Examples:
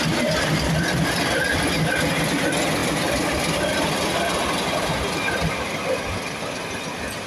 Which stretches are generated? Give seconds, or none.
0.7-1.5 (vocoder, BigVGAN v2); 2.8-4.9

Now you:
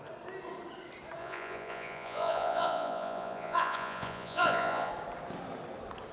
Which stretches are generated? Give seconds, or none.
1.2-4.9 (vocoder, Vocos)

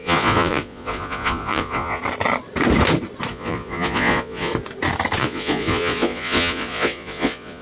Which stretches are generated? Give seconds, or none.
0.0-2.0 (vocoder, Vocos); 3.3-4.5; 5.2-7.6

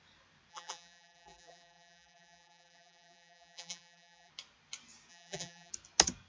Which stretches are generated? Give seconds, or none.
0.5-4.3 (vocoder, BigVGAN v2); 5.1-5.7

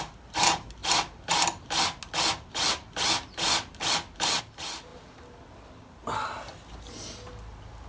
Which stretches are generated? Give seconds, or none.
none

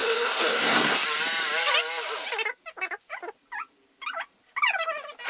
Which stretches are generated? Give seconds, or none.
0.0-1.0 (codec, SNAC)

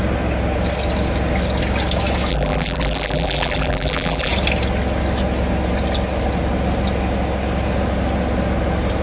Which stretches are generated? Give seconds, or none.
2.3-4.3 (vocoder, BigVGAN v2)